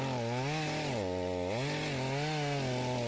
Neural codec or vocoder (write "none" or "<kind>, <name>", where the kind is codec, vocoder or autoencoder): none